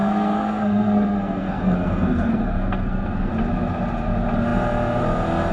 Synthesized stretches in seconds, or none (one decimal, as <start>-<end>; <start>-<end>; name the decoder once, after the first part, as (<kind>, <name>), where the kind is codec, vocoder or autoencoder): 0.0-3.3 (codec, SNAC)